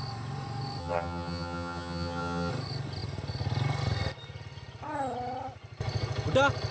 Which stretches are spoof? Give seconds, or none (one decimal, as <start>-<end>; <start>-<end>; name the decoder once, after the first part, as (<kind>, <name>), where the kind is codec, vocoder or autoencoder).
0.8-2.5 (vocoder, HiFi-GAN)